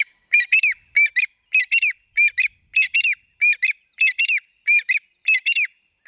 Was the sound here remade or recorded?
recorded